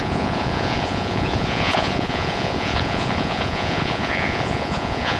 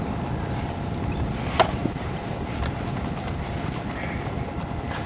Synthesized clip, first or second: first